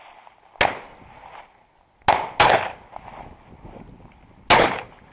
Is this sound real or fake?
real